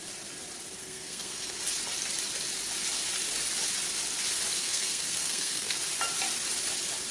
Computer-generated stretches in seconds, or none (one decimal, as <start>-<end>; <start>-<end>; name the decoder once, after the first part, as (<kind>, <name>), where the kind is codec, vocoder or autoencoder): 0.8-1.5 (codec, SNAC); 4.6-5.8